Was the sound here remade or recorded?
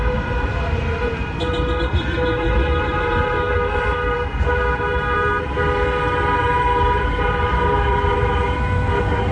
remade